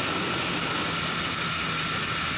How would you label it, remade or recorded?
recorded